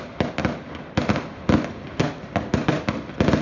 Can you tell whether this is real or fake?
real